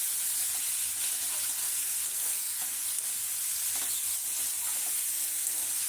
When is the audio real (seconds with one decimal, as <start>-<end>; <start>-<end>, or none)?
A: 0.0-1.6; 3.0-5.1